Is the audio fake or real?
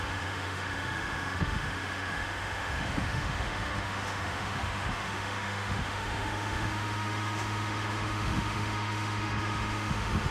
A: fake